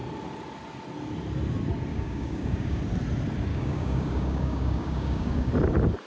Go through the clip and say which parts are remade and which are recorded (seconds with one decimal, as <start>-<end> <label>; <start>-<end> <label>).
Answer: 0.0-1.9 recorded; 1.9-2.8 remade; 2.8-3.5 recorded; 3.5-5.5 remade; 5.5-6.1 recorded